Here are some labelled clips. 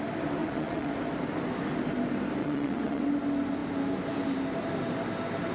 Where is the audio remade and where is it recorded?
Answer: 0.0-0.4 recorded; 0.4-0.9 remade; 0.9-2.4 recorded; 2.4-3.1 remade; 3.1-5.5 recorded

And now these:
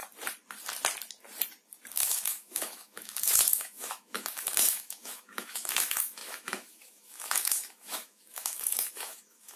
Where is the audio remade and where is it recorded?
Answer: 0.0-1.9 recorded; 1.9-9.6 remade

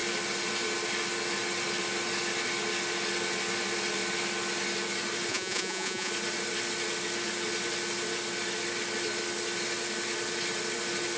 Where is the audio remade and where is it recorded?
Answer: 0.0-5.3 recorded; 5.3-6.1 remade; 6.1-11.2 recorded

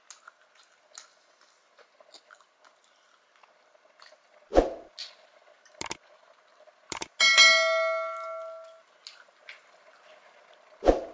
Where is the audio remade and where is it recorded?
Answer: 0.0-11.1 recorded